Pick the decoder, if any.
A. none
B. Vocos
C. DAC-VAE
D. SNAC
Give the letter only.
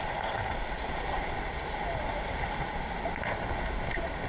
A